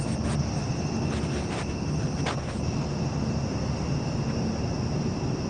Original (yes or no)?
yes